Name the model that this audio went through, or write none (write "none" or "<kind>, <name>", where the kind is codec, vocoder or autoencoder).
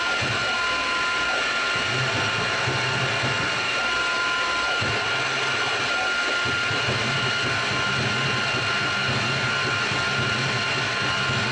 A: none